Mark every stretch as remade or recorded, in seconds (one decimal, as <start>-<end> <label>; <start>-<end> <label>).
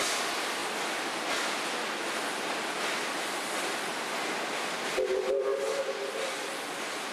0.0-7.1 recorded